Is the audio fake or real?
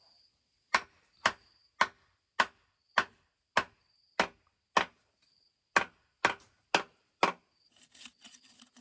real